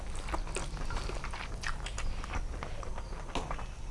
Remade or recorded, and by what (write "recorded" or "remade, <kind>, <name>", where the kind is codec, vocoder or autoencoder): recorded